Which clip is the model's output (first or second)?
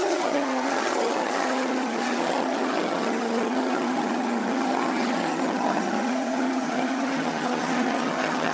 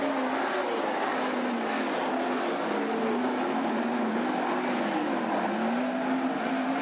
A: first